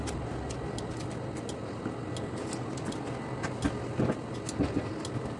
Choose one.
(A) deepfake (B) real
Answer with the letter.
B